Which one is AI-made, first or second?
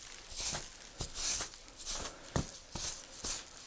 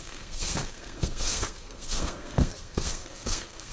second